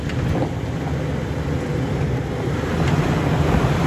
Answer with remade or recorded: recorded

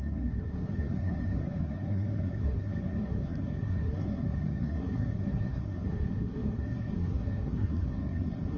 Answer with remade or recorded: remade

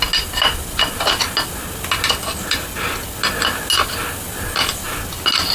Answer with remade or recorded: recorded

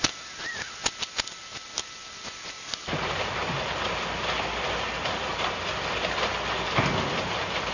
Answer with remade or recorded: recorded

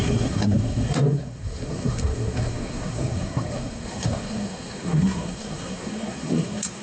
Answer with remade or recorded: remade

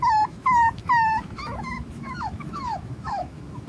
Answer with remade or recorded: remade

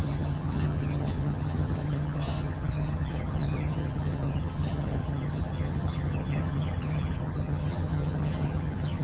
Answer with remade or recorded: remade